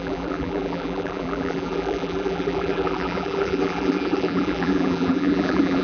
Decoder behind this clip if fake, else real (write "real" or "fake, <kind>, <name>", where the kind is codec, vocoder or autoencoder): fake, vocoder, BigVGAN v2